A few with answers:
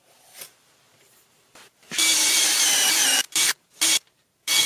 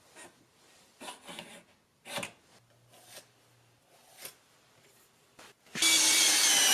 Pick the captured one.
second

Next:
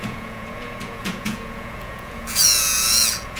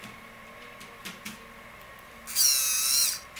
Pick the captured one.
second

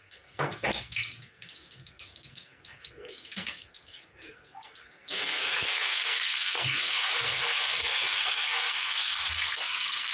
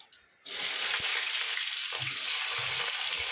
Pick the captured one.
second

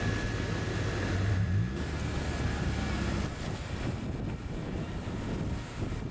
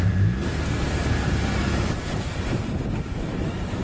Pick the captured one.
first